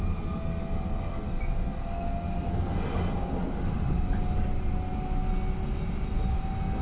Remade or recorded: recorded